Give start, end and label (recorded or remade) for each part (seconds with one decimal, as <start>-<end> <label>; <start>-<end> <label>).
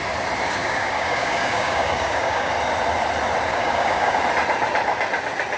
0.0-0.6 recorded; 0.6-2.5 remade; 2.5-3.5 recorded; 3.5-4.2 remade; 4.2-5.6 recorded